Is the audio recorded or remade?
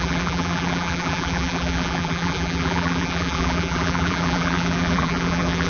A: remade